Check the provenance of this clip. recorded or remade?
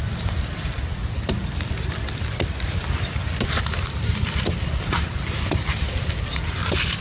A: recorded